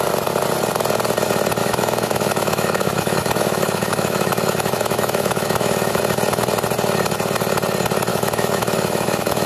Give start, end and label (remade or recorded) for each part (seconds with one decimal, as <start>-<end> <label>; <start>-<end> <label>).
0.0-1.6 recorded; 1.6-6.0 remade; 6.0-8.1 recorded; 8.1-9.5 remade